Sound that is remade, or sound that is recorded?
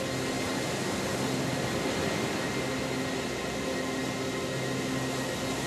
recorded